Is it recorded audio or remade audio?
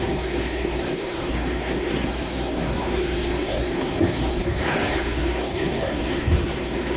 remade